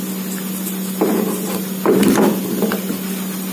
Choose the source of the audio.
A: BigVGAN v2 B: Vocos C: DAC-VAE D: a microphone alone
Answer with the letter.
D